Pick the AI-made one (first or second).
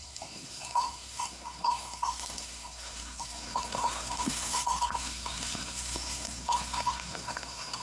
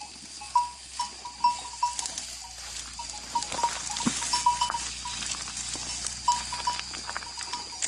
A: first